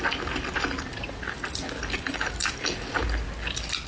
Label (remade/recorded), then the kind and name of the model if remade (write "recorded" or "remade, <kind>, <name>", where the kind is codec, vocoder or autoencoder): recorded